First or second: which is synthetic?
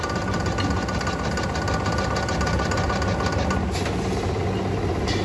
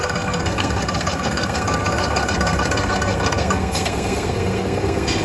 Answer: second